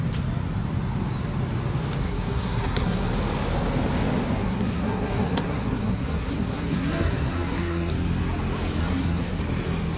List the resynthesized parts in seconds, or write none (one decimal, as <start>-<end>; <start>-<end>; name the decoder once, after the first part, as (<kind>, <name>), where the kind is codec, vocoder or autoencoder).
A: 2.0-3.1 (codec, SNAC); 4.4-7.9; 8.8-9.4